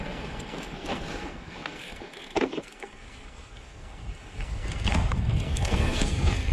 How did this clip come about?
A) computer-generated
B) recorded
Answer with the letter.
A